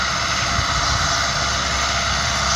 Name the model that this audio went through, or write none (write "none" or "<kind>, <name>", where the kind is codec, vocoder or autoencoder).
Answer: none